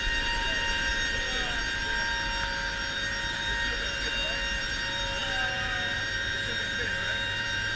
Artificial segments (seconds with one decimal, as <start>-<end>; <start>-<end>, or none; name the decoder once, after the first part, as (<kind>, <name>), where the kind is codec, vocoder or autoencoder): 0.0-0.9 (vocoder, BigVGAN v2); 3.3-4.1; 4.6-7.8